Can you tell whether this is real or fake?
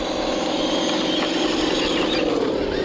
real